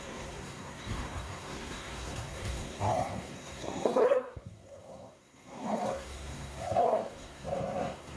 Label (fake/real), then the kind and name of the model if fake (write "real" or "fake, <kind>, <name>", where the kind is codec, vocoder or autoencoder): fake, codec, SNAC